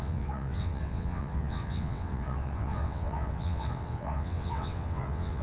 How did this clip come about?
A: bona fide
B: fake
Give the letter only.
B